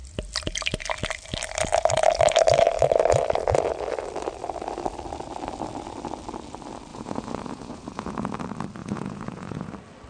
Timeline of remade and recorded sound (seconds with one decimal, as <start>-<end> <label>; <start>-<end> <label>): 0.0-6.9 recorded; 6.9-8.3 remade; 8.3-8.8 recorded; 8.8-9.7 remade; 9.7-10.1 recorded